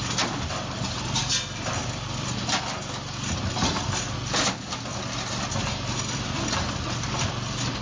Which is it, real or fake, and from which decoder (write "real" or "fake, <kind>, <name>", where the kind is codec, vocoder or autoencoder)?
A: real